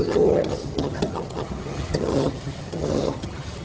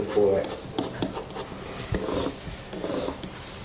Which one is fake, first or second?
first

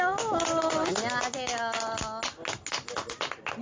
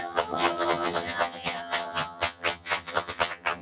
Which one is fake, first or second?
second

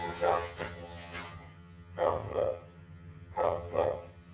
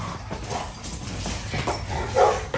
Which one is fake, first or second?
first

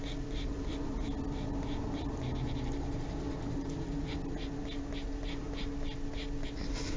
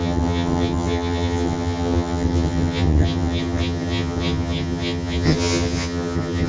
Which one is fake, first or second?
second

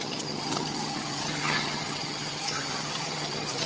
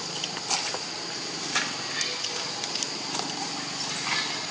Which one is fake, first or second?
first